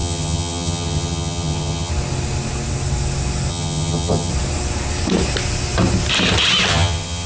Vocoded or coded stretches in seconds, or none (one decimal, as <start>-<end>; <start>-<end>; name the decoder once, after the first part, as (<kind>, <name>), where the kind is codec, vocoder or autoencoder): 0.0-1.9 (vocoder, HiFi-GAN); 3.5-4.3; 6.7-7.3

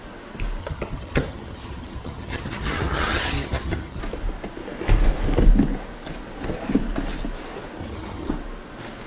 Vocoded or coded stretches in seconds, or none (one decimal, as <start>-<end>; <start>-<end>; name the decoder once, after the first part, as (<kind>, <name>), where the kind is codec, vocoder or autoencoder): 0.6-4.0 (vocoder, HiFi-GAN); 7.8-8.3